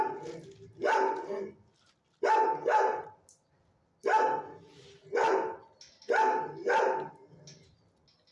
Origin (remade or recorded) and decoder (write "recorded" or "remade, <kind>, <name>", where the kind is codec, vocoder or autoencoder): recorded